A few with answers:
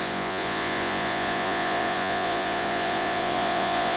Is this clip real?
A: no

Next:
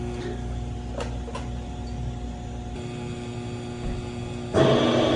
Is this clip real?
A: yes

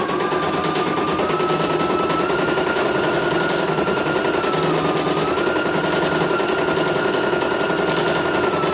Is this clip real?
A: yes